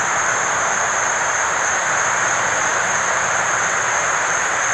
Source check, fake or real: real